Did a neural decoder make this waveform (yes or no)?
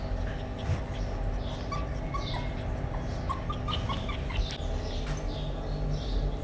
no